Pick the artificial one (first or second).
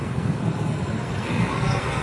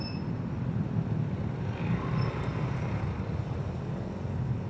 first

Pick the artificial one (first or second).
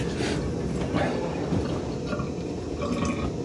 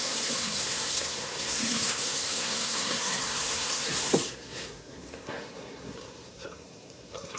second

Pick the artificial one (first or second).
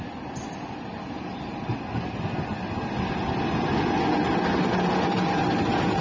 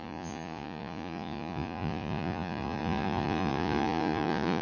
second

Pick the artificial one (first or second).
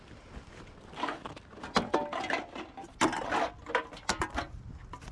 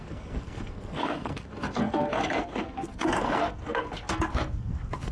second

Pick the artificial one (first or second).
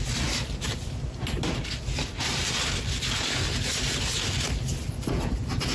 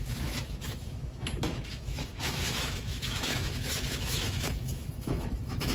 second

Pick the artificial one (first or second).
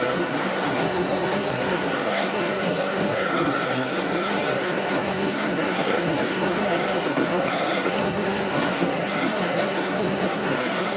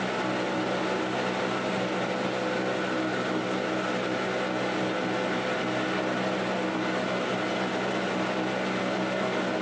first